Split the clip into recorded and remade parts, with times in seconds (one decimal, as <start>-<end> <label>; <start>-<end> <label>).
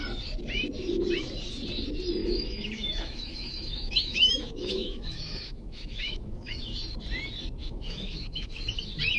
0.0-2.2 recorded; 2.2-6.6 remade; 6.6-7.6 recorded; 7.6-8.5 remade; 8.5-9.2 recorded